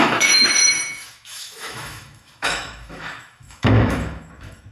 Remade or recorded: remade